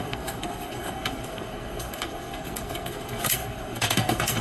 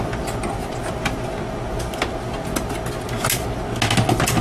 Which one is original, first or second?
second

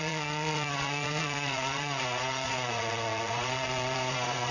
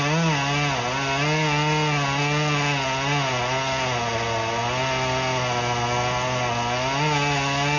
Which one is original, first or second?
second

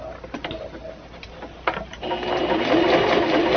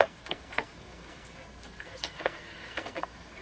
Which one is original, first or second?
first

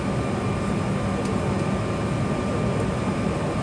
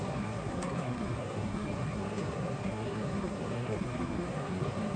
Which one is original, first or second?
first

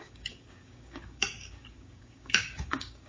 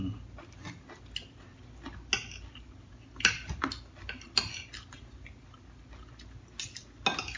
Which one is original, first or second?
second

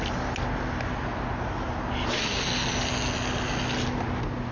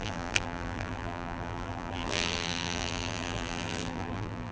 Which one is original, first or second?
first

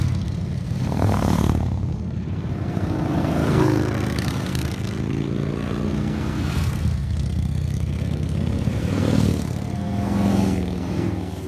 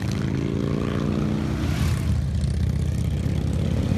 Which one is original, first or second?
second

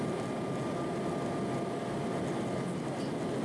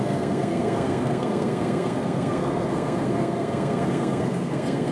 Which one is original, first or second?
first